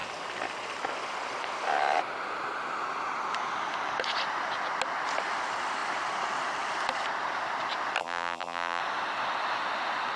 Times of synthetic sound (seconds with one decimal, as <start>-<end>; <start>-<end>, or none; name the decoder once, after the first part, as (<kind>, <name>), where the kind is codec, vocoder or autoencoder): 8.0-8.8 (vocoder, BigVGAN v2)